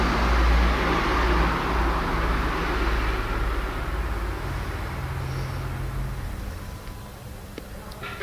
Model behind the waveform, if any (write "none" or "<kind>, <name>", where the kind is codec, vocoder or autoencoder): none